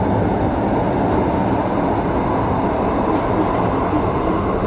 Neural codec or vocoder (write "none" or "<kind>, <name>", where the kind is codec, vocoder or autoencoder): none